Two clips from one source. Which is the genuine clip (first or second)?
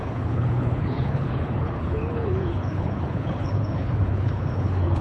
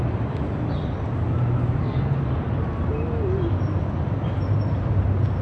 second